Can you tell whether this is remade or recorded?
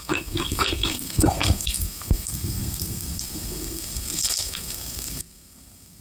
remade